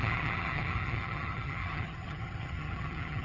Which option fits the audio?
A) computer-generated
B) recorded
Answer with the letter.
A